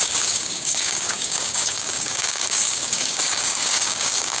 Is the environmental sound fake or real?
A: fake